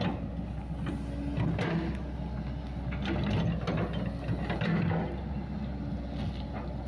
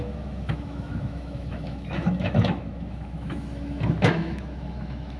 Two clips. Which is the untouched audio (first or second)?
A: first